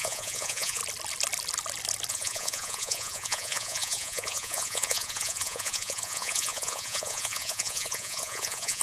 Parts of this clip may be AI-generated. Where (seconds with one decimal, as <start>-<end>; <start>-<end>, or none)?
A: 0.0-0.8; 2.1-8.8